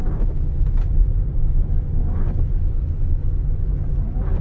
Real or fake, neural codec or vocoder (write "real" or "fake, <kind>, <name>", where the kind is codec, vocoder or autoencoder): fake, vocoder, BigVGAN v2